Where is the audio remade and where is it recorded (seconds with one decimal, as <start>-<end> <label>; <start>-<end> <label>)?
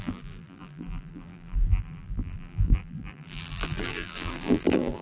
0.0-5.0 remade